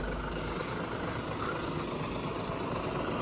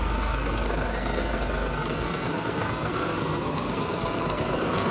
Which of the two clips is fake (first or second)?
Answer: second